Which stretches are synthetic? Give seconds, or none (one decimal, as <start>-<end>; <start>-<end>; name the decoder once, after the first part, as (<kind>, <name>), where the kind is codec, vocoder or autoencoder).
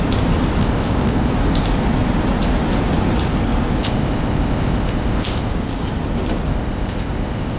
0.6-1.3 (codec, ZipCodec); 3.8-5.5; 6.5-7.6